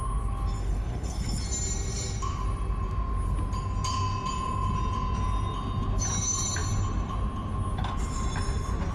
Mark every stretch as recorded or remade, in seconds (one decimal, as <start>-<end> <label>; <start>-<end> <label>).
0.0-0.6 recorded; 0.6-1.4 remade; 1.4-8.9 recorded